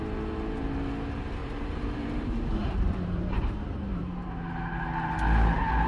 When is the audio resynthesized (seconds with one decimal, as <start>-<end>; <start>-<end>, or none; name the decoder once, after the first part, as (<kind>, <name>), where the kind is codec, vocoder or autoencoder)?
1.4-4.1 (vocoder, BigVGAN v2)